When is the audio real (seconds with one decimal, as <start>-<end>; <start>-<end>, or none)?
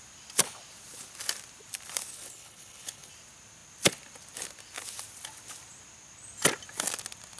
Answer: 0.0-2.1; 3.1-7.4